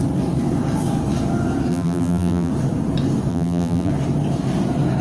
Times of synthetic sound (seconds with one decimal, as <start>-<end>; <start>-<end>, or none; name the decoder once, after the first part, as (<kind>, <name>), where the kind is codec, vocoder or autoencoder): 1.7-2.5 (vocoder, BigVGAN v2); 3.3-3.9